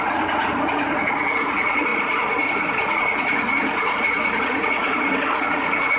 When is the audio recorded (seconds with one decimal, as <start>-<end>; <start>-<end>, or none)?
none